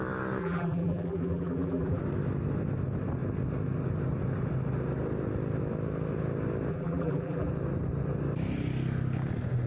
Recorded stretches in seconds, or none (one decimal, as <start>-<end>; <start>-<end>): 0.0-0.4; 2.0-6.7; 7.5-9.7